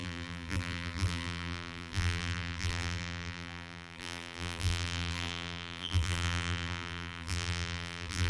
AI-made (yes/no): yes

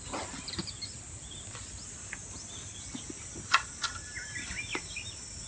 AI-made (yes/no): no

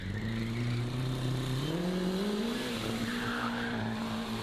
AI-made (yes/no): yes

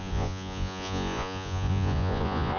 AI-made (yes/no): yes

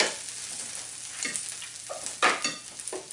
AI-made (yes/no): no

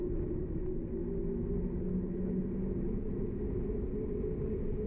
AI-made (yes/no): no